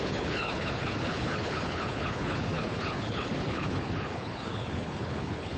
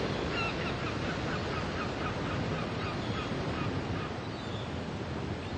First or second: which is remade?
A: first